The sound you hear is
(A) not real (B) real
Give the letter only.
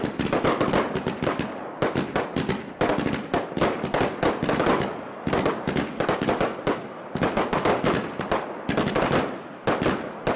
B